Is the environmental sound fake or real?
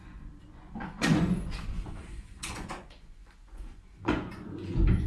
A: fake